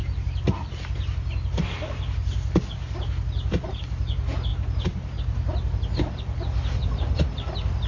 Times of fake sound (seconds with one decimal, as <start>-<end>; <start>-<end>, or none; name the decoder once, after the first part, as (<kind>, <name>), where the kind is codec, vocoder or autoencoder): none